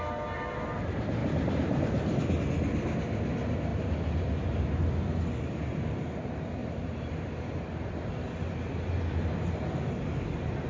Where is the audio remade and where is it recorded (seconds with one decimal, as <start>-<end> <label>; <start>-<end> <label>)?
0.0-1.2 recorded; 1.2-2.4 remade; 2.4-3.7 recorded; 3.7-4.6 remade; 4.6-6.6 recorded; 6.6-8.1 remade; 8.1-10.7 recorded